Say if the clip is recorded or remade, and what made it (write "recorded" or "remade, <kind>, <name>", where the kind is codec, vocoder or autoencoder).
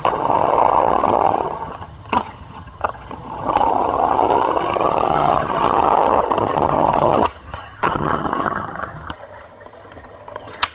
remade, vocoder, HiFi-GAN